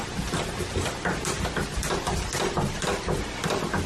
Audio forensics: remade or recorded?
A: recorded